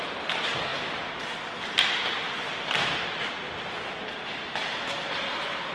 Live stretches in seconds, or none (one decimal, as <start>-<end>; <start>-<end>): 0.7-4.1